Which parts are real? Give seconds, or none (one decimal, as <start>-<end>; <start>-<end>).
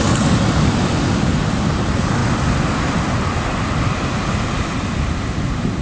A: 0.0-5.8